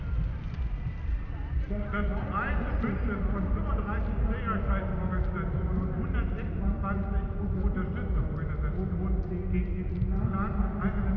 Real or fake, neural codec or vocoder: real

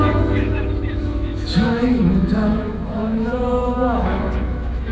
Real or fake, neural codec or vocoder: fake, autoencoder, DAC-VAE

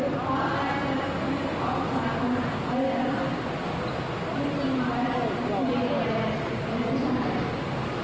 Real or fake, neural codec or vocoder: real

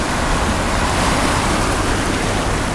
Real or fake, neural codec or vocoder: real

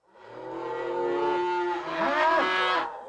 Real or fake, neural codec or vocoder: real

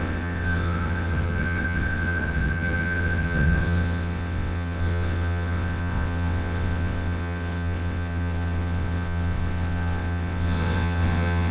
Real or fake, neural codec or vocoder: fake, vocoder, WaveNeXt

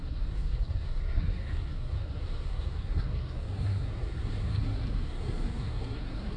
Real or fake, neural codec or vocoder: fake, codec, SNAC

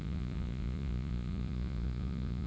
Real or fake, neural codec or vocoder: fake, vocoder, Vocos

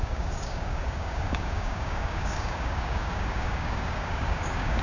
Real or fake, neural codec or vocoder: fake, codec, DAC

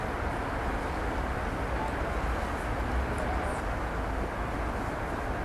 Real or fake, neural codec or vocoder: real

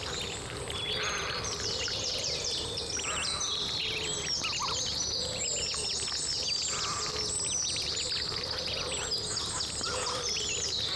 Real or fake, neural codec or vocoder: real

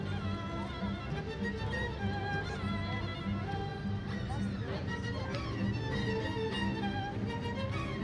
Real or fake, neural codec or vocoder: real